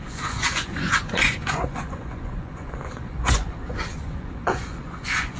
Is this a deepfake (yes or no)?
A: yes